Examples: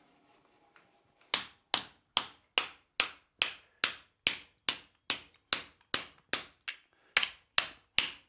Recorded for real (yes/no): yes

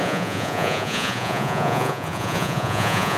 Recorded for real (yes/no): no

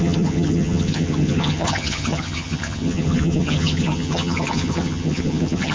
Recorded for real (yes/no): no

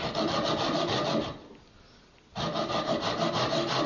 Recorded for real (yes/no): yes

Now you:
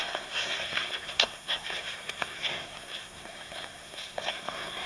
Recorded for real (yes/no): no